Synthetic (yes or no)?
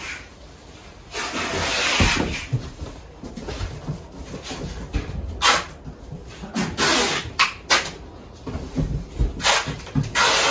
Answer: no